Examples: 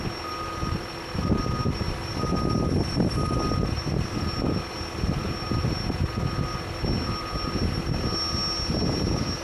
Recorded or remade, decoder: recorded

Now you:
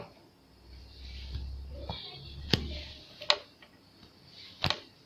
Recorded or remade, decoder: recorded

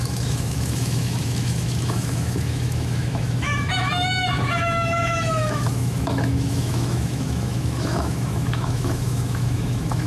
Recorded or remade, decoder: remade, autoencoder, DAC-VAE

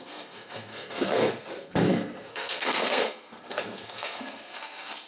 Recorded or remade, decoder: remade, codec, SNAC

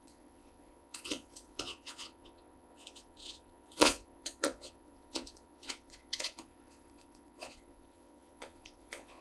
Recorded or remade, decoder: remade, vocoder, Vocos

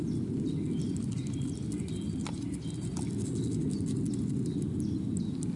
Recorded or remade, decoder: recorded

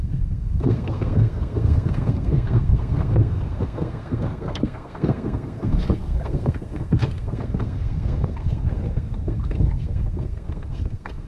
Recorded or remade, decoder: remade, codec, SNAC